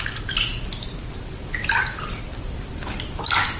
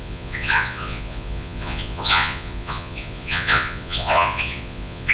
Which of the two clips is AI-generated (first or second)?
second